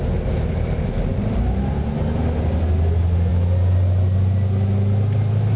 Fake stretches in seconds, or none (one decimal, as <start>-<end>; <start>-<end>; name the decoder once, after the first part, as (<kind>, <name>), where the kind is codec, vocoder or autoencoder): none